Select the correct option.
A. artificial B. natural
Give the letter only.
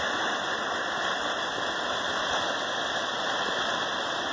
B